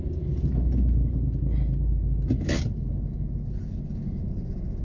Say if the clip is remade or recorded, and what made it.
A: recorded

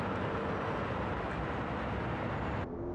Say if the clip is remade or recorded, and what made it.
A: recorded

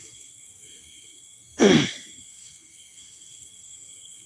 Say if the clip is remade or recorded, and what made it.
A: remade, codec, SNAC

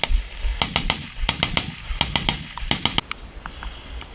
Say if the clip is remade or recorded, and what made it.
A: recorded